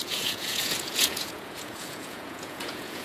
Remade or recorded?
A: remade